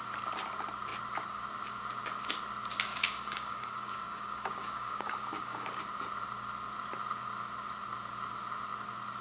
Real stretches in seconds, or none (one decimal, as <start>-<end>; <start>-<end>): 0.0-2.9; 5.8-9.2